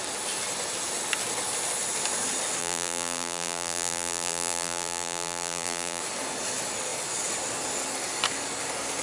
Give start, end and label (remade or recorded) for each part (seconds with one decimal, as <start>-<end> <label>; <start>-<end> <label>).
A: 0.0-2.6 recorded; 2.6-6.0 remade; 6.0-9.0 recorded